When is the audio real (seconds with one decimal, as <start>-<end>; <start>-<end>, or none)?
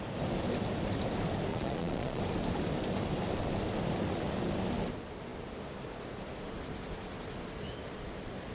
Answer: 0.0-1.5; 2.2-8.5